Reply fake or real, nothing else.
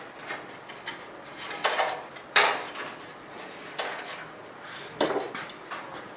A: real